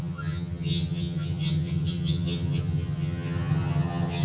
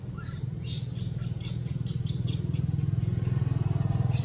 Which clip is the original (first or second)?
second